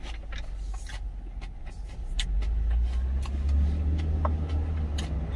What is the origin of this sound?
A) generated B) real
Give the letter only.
B